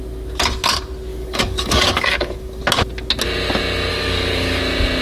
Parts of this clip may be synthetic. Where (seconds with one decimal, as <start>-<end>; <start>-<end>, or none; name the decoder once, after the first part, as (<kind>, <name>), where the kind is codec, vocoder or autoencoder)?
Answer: 1.1-2.6 (codec, DAC); 3.9-4.6